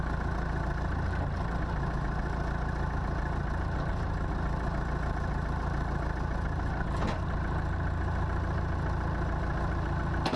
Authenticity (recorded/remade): recorded